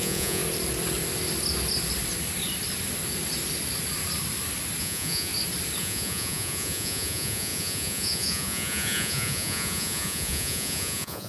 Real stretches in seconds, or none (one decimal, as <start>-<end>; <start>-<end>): 0.4-4.8; 5.3-5.8